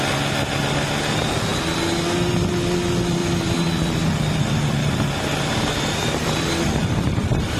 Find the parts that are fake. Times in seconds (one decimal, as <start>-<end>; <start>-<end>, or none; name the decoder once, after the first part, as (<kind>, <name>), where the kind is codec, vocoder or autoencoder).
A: 3.2-6.6 (vocoder, BigVGAN v2)